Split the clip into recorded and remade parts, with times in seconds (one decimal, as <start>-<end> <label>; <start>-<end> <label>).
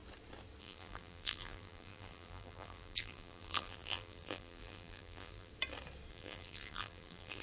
0.0-0.6 recorded; 0.6-5.5 remade; 5.5-6.1 recorded; 6.1-7.4 remade